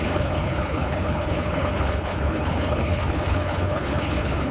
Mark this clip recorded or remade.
remade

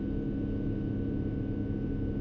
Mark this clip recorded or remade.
recorded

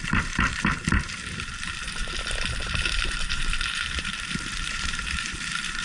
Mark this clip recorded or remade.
remade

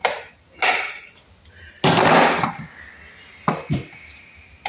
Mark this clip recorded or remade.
recorded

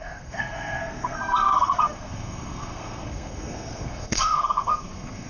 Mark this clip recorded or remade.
remade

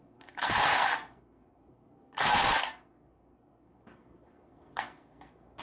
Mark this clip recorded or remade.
remade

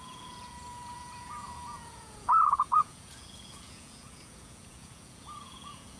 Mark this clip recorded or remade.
remade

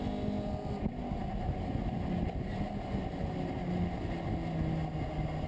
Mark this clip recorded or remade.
recorded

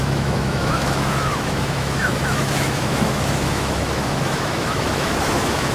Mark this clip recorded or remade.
remade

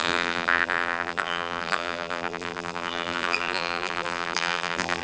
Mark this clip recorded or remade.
remade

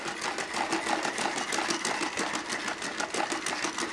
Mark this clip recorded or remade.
recorded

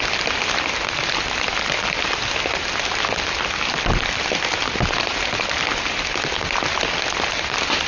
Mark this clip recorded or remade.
recorded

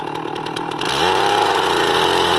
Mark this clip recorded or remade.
remade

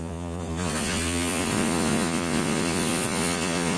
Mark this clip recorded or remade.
remade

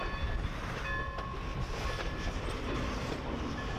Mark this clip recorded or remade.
recorded